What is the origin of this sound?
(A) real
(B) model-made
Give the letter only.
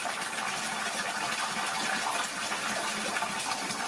A